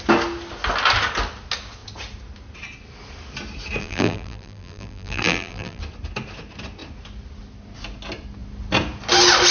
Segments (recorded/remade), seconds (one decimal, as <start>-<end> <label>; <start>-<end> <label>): 0.0-3.8 recorded; 3.8-5.8 remade; 5.8-9.5 recorded